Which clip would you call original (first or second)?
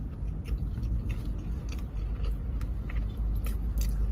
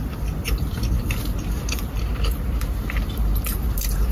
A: first